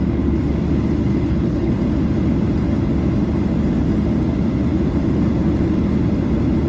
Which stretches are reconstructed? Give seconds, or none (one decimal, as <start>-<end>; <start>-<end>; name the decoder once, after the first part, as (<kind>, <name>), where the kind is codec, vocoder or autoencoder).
1.1-1.7 (codec, HILCodec)